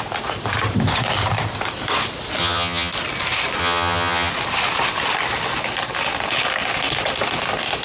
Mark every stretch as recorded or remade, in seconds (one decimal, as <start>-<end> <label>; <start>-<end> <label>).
0.0-2.4 recorded; 2.4-2.9 remade; 2.9-3.6 recorded; 3.6-4.3 remade; 4.3-7.8 recorded